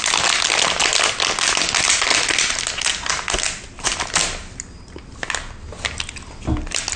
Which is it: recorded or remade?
recorded